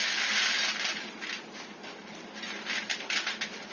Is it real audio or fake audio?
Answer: real